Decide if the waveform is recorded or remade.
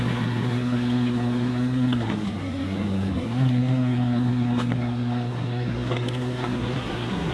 remade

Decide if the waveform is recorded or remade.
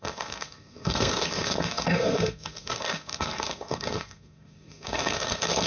remade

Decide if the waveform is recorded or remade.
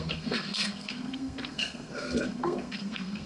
remade